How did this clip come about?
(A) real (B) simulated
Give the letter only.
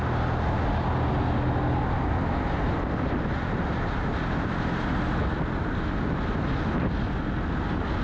A